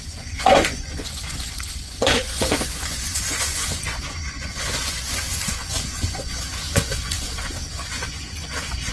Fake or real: fake